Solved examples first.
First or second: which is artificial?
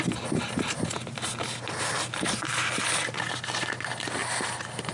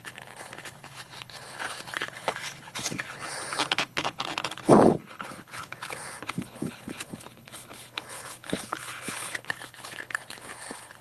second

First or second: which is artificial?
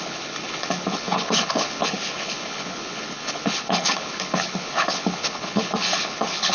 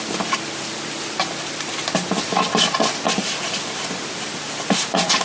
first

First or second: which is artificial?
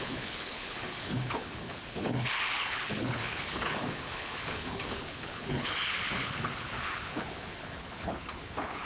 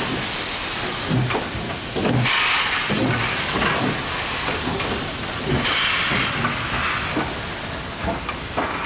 first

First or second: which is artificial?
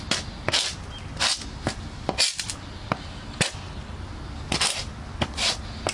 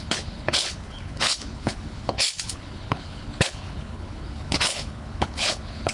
second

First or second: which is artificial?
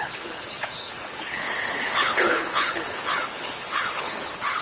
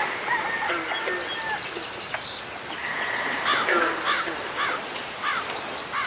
first